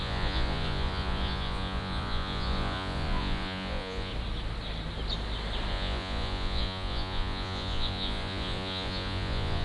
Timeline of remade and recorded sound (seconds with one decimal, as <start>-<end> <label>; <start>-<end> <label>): 0.0-4.1 remade; 4.1-5.7 recorded; 5.7-9.6 remade